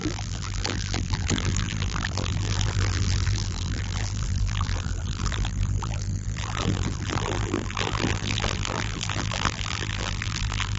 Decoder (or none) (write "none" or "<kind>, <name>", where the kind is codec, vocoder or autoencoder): vocoder, BigVGAN v2